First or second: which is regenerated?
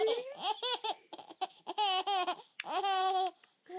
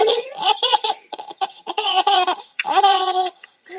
second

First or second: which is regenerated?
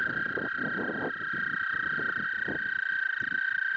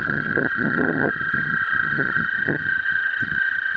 second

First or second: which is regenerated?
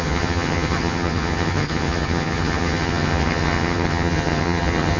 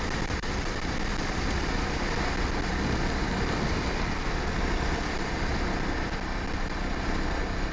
first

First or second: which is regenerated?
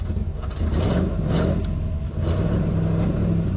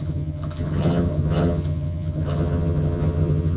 second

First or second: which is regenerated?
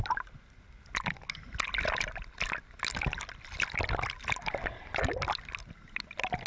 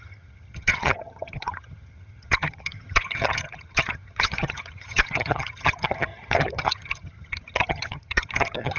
second